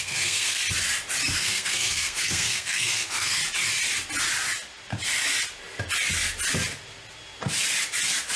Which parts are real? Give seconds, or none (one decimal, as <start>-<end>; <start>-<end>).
0.6-1.4; 3.4-8.4